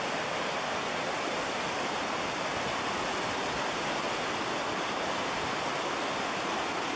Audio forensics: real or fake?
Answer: real